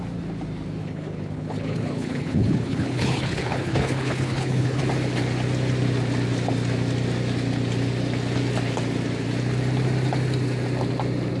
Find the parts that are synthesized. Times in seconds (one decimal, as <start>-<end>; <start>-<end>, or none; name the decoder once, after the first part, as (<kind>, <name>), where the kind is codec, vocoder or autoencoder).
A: 0.8-4.8 (codec, HILCodec)

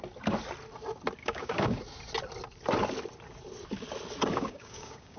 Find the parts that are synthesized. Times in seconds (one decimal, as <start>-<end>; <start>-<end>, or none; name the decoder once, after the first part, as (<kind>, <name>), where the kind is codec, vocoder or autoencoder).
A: 1.2-1.8 (codec, DAC); 4.3-5.2

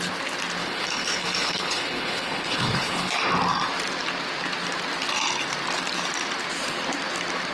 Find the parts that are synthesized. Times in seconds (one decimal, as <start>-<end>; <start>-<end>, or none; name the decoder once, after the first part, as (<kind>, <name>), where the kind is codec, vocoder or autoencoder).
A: 0.6-3.1 (codec, HILCodec)

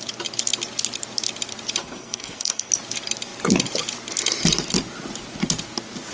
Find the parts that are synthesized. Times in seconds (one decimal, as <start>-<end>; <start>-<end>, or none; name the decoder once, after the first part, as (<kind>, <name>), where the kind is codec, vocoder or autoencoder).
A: 1.8-2.7 (codec, SNAC)

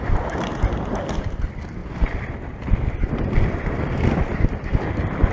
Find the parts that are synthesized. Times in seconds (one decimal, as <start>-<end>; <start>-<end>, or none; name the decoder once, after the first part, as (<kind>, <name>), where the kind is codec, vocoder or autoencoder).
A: 0.0-0.5 (vocoder, BigVGAN v2); 1.2-5.3